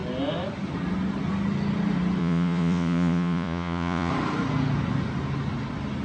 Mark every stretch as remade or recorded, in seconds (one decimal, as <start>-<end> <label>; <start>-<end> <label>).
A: 0.0-2.2 recorded; 2.2-4.1 remade; 4.1-6.0 recorded